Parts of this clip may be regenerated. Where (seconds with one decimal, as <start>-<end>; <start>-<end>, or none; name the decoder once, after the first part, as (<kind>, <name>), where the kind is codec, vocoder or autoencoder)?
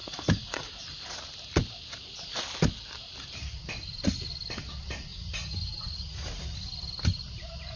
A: 0.0-0.7 (vocoder, Vocos); 5.1-6.3